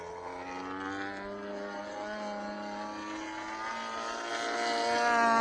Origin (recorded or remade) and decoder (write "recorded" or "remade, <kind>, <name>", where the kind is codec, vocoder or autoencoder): recorded